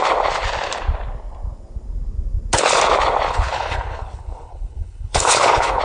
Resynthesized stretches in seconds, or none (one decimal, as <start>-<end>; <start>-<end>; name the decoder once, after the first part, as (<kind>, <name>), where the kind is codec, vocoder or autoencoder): 3.3-5.8 (codec, HILCodec)